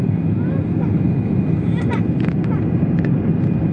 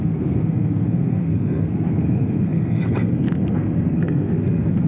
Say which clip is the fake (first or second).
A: second